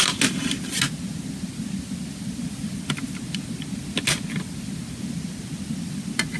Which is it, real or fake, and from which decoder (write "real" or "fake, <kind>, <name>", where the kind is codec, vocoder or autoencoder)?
real